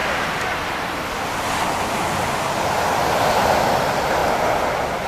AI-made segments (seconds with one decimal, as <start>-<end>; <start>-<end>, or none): none